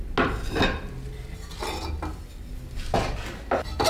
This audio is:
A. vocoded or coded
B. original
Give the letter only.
B